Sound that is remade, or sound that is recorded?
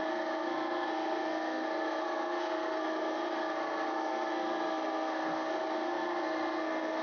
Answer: remade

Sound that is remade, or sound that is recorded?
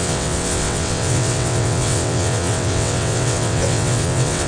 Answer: remade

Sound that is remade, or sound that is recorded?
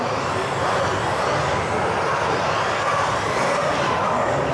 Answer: recorded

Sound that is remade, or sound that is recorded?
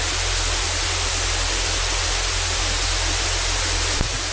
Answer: recorded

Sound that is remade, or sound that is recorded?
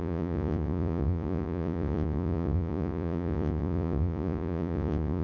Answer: remade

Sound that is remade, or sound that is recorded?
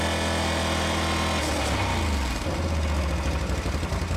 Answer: recorded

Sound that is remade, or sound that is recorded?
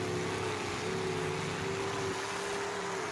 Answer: recorded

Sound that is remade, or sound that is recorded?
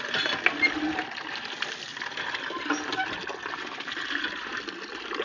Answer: recorded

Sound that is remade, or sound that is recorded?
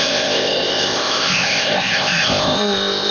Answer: remade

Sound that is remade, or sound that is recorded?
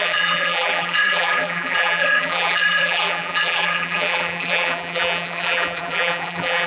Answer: remade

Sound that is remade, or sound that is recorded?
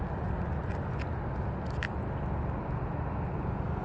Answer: recorded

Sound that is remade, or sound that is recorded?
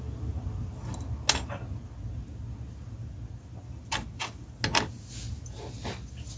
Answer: recorded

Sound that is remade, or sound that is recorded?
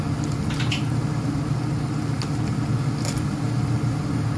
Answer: recorded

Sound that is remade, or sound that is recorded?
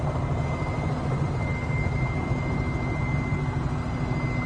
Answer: recorded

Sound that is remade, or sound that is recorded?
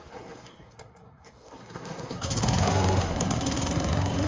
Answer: remade